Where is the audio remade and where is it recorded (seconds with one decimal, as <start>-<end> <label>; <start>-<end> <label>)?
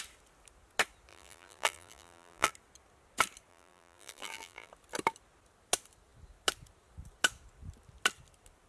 0.0-1.1 recorded; 1.1-2.5 remade; 2.5-3.5 recorded; 3.5-4.7 remade; 4.7-8.7 recorded